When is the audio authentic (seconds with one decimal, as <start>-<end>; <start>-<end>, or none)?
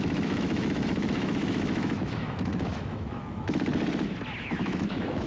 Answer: 3.7-4.4